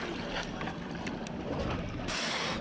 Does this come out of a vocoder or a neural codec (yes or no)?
no